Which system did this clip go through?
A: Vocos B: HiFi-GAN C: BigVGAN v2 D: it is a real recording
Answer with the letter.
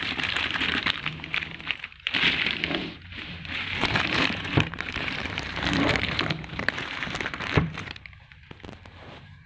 C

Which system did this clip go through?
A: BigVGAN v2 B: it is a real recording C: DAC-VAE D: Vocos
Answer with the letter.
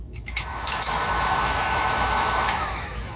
C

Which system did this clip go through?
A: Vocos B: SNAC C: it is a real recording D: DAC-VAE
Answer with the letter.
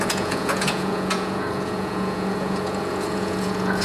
A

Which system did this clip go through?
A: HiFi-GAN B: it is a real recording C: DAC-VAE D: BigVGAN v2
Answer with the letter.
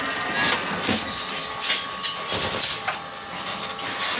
B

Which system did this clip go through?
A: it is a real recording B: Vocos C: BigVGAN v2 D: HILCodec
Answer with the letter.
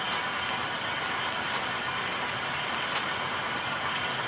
A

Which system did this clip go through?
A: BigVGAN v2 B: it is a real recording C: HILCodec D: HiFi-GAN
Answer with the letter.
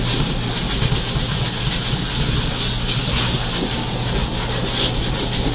B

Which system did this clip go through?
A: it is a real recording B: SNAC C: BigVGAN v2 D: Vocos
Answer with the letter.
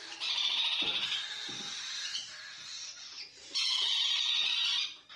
A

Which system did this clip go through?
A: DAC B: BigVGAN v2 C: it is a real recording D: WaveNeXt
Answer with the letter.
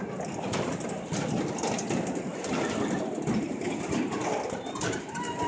C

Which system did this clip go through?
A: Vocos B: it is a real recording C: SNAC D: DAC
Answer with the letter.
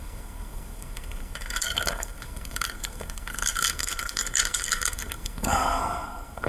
C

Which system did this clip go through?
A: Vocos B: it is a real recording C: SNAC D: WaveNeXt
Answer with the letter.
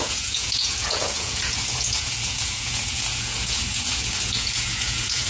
A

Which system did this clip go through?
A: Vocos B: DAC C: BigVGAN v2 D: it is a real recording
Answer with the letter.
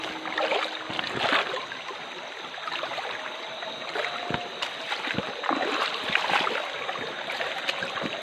D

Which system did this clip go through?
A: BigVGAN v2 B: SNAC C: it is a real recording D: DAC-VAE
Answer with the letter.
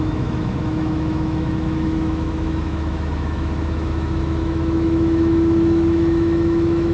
D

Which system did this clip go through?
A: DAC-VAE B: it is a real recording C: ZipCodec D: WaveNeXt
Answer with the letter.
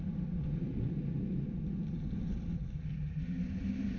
B